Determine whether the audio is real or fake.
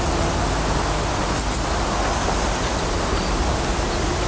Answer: real